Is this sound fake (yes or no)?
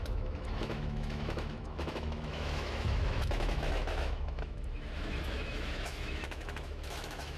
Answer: yes